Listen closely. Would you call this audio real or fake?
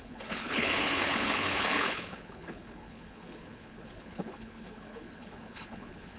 fake